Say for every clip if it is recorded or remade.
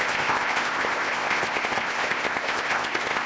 remade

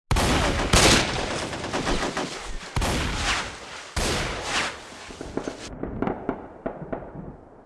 recorded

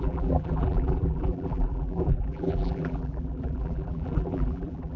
remade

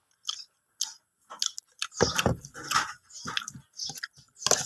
recorded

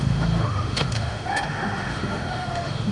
remade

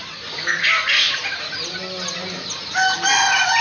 recorded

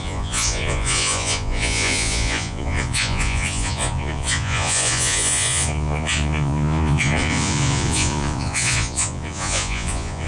remade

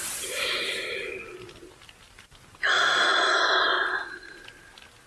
recorded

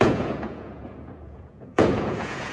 remade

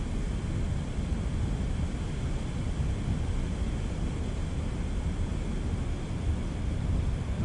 recorded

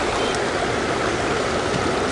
recorded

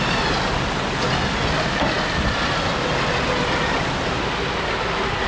recorded